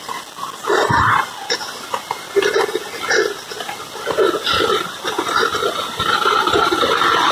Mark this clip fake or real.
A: real